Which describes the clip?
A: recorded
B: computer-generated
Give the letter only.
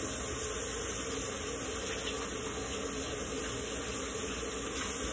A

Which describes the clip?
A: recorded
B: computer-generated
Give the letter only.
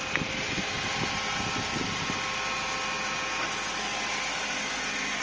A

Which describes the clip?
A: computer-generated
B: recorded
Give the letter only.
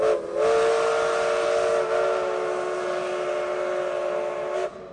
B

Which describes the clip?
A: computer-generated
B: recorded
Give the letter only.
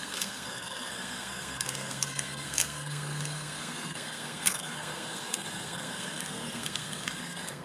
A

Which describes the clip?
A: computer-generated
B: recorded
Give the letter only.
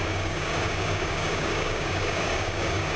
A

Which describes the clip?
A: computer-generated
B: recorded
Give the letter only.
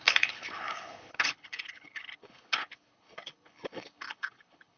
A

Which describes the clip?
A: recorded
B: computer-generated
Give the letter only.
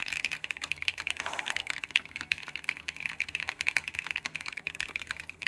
B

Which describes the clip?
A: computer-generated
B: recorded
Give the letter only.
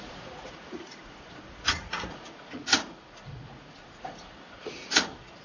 A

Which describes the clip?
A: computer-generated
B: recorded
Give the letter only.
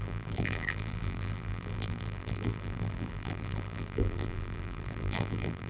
A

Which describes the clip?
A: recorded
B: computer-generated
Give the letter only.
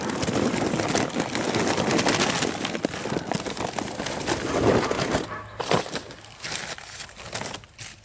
A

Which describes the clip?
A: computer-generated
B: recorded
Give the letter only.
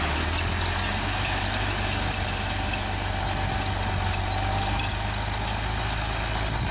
B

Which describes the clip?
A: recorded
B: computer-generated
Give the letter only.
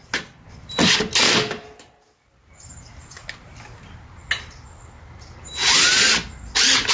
A